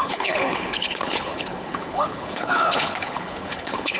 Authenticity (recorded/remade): remade